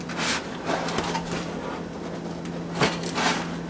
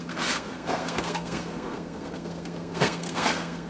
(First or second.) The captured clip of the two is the first